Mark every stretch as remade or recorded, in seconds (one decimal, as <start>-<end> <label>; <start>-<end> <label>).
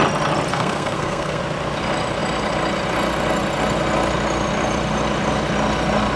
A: 0.0-0.5 recorded; 0.5-1.4 remade; 1.4-6.2 recorded